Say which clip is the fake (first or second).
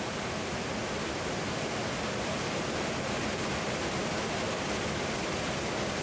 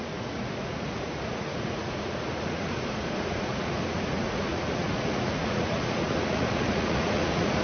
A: second